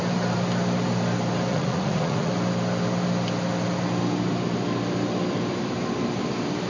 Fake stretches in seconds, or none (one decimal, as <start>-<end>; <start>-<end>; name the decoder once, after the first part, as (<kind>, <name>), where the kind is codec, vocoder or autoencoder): 1.5-2.3 (vocoder, Vocos)